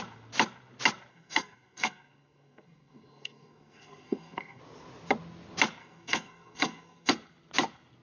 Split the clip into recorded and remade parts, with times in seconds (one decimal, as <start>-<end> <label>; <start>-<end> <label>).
0.0-1.1 recorded; 1.1-4.6 remade; 4.6-5.8 recorded; 5.8-7.1 remade; 7.1-8.0 recorded